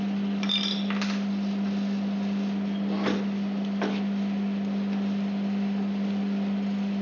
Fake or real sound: real